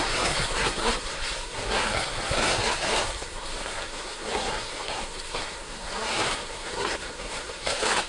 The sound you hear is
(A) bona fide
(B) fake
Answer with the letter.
B